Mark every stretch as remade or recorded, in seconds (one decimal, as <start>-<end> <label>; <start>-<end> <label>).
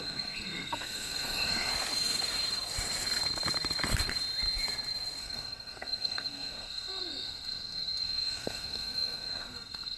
0.0-1.7 remade; 1.7-5.2 recorded; 5.2-10.0 remade